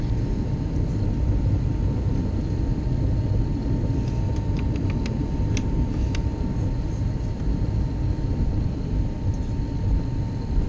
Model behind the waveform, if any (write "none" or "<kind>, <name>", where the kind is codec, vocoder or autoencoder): none